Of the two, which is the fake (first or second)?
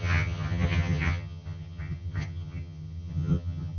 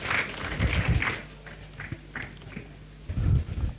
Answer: first